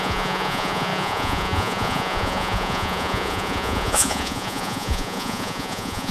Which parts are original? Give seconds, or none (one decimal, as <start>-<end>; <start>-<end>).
none